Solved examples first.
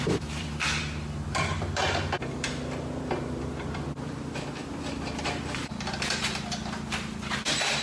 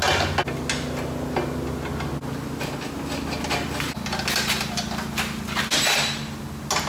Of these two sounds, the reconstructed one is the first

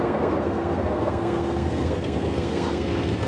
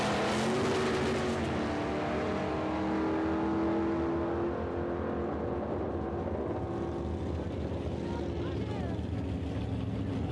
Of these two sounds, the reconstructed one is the first